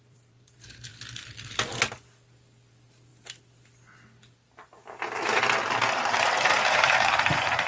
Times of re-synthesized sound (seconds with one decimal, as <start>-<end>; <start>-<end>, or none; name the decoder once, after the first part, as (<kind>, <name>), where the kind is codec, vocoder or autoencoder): 0.0-0.9 (vocoder, BigVGAN v2); 2.7-3.1; 6.2-7.7